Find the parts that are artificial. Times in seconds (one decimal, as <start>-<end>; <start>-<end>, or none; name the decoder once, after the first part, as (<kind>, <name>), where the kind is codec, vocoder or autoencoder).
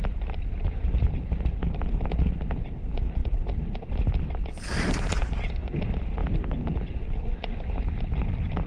none